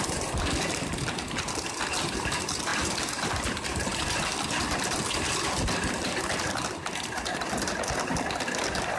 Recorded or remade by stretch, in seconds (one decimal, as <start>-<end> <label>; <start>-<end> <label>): 0.0-2.7 remade; 2.7-3.4 recorded; 3.4-9.0 remade